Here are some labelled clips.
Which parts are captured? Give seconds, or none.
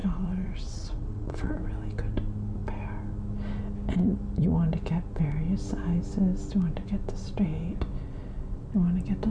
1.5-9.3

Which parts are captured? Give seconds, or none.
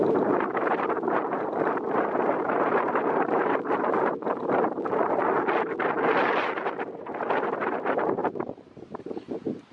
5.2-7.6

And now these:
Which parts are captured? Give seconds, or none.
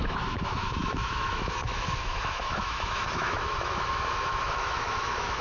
none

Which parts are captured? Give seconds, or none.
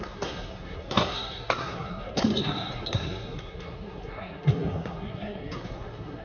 none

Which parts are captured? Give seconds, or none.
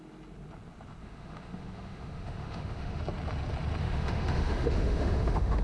0.0-1.0; 3.0-3.8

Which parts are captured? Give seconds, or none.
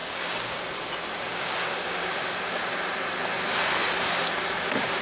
0.6-1.3; 2.6-5.0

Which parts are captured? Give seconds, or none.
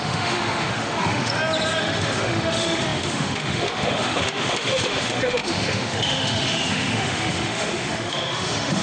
1.3-1.8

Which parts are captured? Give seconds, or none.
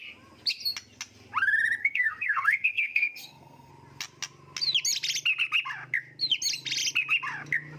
0.0-1.8; 3.7-7.8